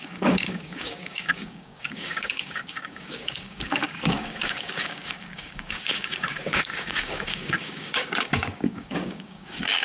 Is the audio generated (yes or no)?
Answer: yes